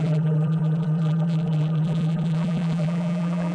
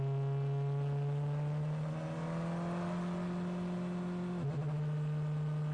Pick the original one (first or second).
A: second